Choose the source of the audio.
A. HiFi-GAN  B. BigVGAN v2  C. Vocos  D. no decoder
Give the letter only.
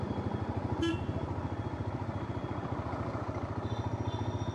B